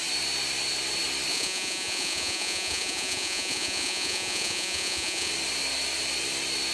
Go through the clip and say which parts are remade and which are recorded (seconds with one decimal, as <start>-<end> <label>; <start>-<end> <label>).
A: 0.0-1.3 recorded; 1.3-5.3 remade; 5.3-6.7 recorded